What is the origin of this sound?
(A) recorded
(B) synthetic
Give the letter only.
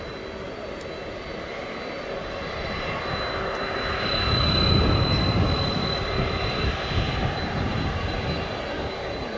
A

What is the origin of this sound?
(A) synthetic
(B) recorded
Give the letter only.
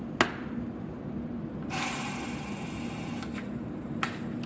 B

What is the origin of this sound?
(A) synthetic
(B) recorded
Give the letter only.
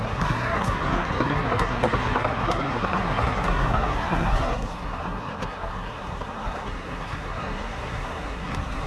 A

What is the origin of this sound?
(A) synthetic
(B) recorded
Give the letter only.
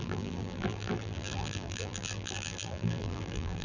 A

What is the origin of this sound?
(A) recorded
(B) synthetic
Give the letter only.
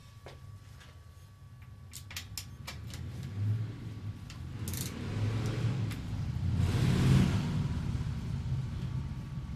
A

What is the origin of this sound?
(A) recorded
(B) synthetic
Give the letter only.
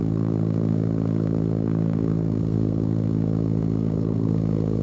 B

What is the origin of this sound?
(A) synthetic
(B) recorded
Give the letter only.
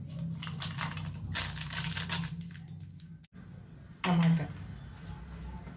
B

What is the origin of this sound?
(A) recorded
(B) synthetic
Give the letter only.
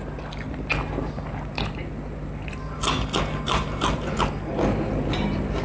A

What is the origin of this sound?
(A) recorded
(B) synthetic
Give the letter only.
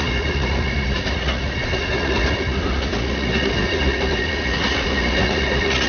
B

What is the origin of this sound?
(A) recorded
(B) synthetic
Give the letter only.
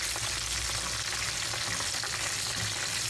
A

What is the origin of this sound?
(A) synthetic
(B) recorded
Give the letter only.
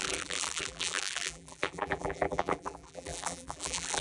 A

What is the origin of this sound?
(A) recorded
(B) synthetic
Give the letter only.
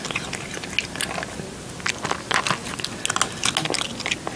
A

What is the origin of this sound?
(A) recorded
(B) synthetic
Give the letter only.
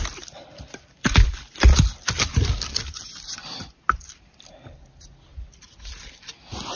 A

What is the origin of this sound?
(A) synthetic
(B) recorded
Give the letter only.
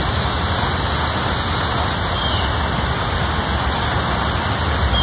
B